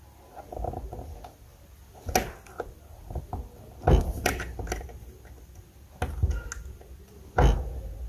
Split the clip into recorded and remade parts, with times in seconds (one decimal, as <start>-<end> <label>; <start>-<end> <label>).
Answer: 0.0-8.1 recorded